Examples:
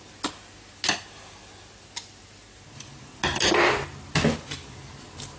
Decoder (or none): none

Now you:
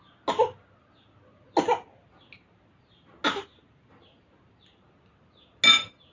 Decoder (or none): none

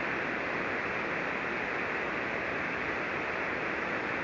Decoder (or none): none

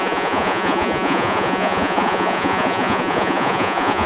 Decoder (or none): vocoder, Vocos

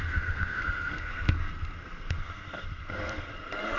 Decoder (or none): codec, SNAC